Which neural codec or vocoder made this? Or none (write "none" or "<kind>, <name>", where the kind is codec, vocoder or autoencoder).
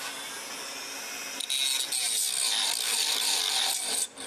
none